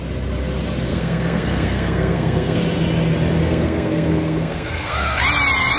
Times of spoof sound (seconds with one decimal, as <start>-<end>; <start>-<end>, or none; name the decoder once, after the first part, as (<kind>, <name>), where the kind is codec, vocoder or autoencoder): 0.9-2.6 (codec, SNAC); 3.4-5.2